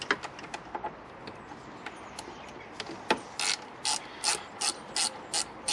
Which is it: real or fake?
real